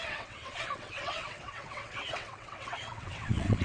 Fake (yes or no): yes